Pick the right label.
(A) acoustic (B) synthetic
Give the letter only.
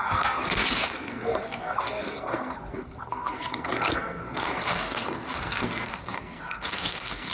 B